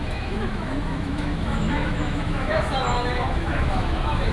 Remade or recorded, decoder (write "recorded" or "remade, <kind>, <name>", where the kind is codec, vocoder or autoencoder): remade, autoencoder, DAC-VAE